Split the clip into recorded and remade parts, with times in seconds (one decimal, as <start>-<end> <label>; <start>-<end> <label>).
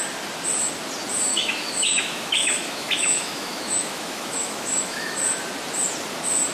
0.0-1.3 recorded; 1.3-5.2 remade; 5.2-6.5 recorded